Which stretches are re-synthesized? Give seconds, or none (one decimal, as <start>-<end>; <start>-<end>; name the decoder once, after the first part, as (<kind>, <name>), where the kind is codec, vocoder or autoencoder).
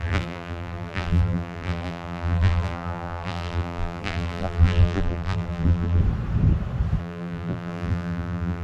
0.0-6.0 (vocoder, BigVGAN v2); 7.0-8.6